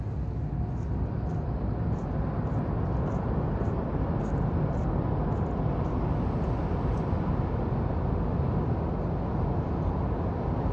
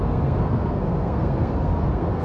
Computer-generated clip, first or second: second